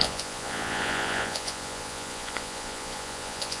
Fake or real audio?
fake